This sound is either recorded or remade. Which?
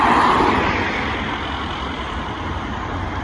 recorded